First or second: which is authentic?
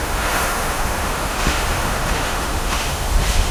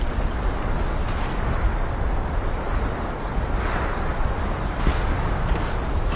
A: second